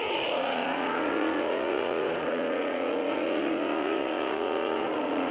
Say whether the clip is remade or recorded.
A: remade